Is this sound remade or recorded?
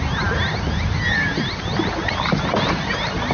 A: recorded